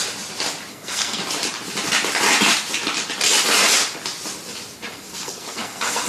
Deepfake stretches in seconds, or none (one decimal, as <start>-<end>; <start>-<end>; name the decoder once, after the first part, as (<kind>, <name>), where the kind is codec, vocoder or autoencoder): 0.7-1.2 (codec, SNAC); 4.9-6.1